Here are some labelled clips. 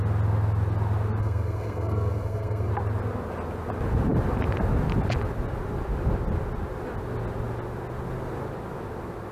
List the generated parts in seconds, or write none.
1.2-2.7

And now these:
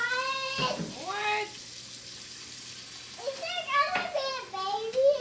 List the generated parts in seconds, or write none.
none

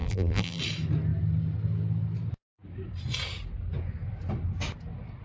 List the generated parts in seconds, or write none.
0.0-0.6

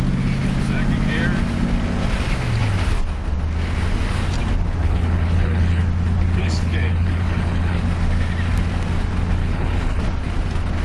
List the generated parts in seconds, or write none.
4.8-5.8; 6.4-7.8; 9.4-10.0

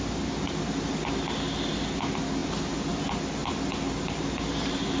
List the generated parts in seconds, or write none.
none

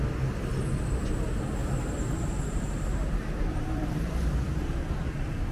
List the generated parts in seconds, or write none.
1.6-4.3